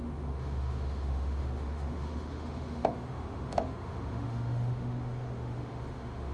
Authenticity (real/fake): fake